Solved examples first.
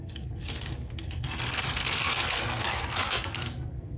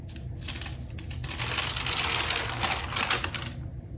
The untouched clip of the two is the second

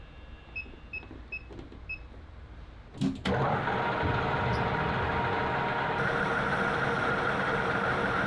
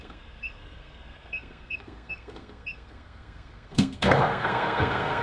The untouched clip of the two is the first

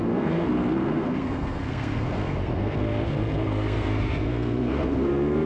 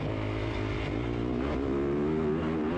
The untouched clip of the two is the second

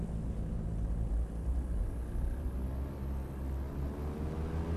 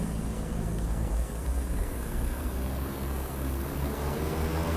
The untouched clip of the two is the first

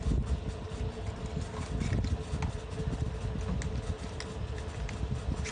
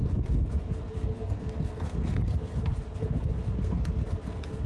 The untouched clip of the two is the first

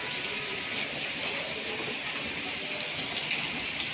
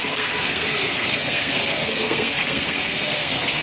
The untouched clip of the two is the first